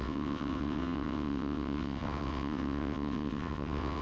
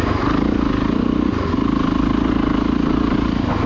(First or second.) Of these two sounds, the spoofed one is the first